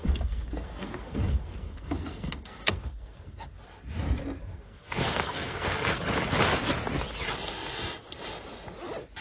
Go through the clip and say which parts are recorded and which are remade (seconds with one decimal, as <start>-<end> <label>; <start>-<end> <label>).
0.0-3.5 remade; 3.5-4.4 recorded; 4.4-6.0 remade; 6.0-9.2 recorded